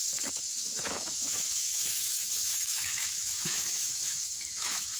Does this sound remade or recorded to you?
remade